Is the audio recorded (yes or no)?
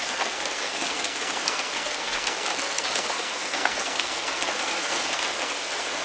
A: no